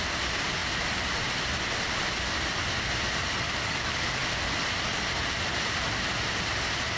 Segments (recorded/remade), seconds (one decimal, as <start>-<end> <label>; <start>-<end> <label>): 0.0-3.6 recorded; 3.6-4.2 remade; 4.2-7.0 recorded